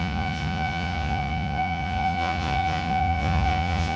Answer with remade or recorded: remade